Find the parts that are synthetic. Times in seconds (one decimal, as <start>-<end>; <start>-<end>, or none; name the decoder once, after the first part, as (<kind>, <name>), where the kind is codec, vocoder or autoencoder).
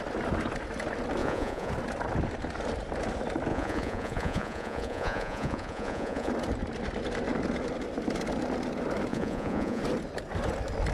1.2-1.7 (vocoder, Vocos); 3.5-6.3; 9.1-9.8